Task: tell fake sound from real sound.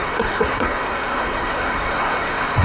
fake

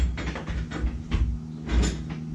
real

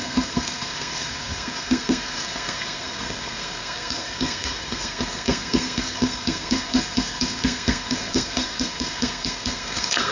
fake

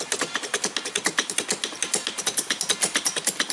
real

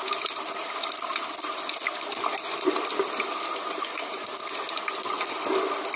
real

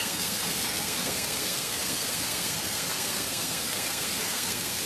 fake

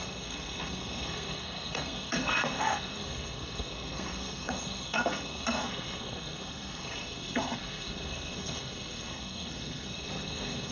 fake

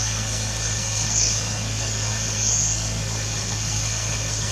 fake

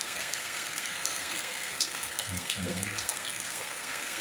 fake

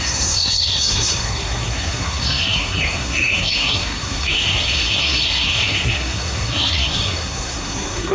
fake